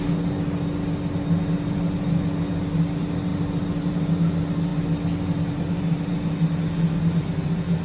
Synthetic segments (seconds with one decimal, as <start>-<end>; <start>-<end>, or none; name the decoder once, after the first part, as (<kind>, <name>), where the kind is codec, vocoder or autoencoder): none